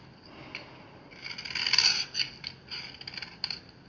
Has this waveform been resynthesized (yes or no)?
no